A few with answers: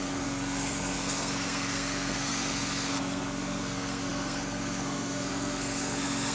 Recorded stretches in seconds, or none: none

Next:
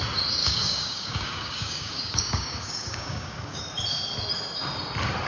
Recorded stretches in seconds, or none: 0.0-0.4; 3.6-5.3

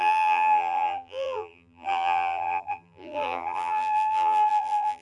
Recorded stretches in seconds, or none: none

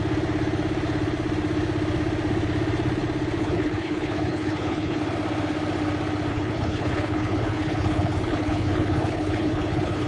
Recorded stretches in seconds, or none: 0.0-3.4; 5.0-6.3

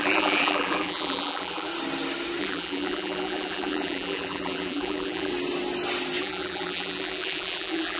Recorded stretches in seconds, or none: 1.7-2.4; 5.3-6.2

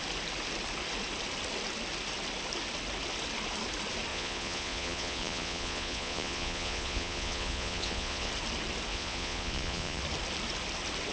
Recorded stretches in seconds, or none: 0.0-4.1; 8.3-8.9; 10.0-11.1

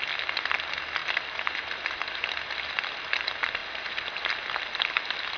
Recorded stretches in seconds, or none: 0.0-5.4

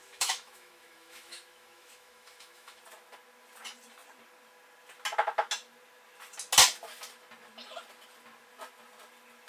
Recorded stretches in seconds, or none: 2.8-9.5